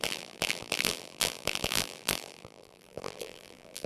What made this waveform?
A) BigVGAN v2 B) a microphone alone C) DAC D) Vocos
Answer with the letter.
A